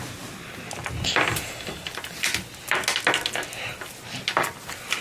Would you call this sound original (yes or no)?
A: yes